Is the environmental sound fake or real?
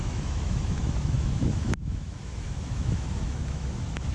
fake